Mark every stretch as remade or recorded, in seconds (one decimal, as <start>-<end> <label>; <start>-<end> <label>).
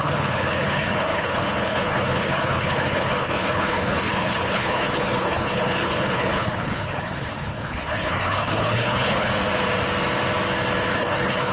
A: 0.0-9.3 remade; 9.3-10.9 recorded; 10.9-11.5 remade